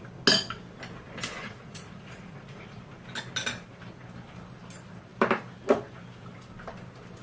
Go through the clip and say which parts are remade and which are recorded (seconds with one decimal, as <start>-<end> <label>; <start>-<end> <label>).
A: 0.0-1.4 recorded; 1.4-2.8 remade; 2.8-7.2 recorded

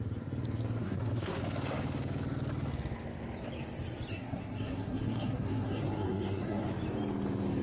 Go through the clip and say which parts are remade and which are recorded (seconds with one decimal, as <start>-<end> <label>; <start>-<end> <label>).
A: 0.0-0.8 recorded; 0.8-1.4 remade; 1.4-4.1 recorded; 4.1-6.7 remade; 6.7-7.6 recorded